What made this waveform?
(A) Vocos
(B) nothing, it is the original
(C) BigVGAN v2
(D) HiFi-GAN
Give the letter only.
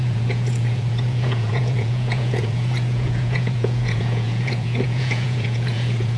A